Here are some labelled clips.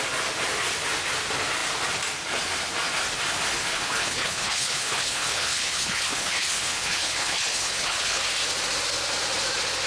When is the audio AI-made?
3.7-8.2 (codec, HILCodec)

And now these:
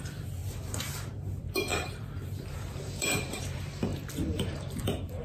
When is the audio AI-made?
0.0-5.2 (vocoder, BigVGAN v2)

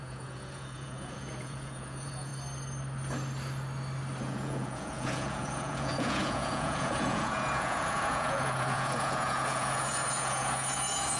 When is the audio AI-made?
0.0-2.3 (vocoder, Vocos); 4.2-11.2

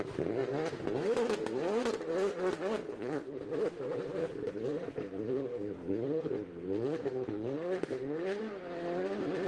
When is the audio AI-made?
2.9-3.4 (codec, HILCodec); 4.2-8.4

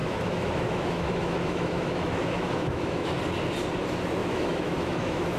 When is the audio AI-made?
0.0-3.2 (autoencoder, DAC-VAE); 4.2-5.4

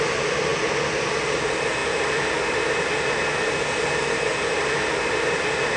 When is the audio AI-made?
none

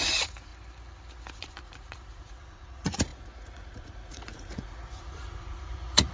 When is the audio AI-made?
0.0-0.5 (vocoder, Vocos); 1.3-6.1

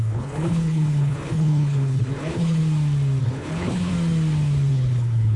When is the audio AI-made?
0.0-2.6 (codec, HILCodec); 3.2-3.9; 4.7-5.4